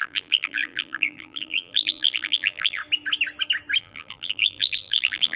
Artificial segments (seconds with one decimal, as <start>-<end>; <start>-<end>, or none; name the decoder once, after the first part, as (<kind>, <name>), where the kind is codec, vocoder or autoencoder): 0.0-2.8 (vocoder, BigVGAN v2); 3.8-5.4